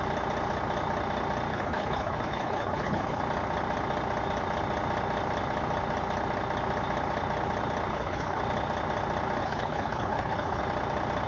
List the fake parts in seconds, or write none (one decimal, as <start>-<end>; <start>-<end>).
1.5-3.2; 7.9-8.4; 9.4-10.6